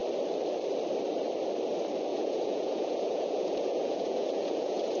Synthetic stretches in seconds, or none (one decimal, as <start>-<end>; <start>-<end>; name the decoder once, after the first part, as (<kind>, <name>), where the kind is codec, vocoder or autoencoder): 2.1-5.0 (vocoder, Vocos)